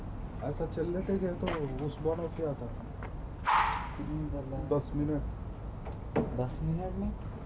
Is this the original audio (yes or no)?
yes